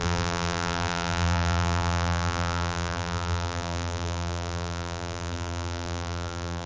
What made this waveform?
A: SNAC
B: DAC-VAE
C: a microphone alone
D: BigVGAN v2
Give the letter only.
D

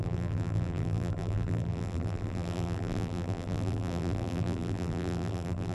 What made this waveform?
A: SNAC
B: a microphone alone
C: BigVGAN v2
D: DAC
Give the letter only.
C